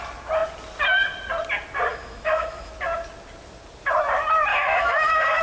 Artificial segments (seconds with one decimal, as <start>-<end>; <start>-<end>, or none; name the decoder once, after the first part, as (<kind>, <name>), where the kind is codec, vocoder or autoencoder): 1.9-2.7 (autoencoder, DAC-VAE); 4.5-5.4